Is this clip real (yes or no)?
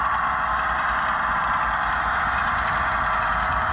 yes